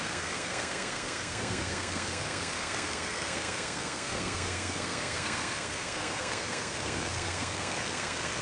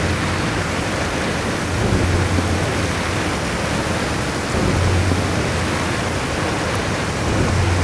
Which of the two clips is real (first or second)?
second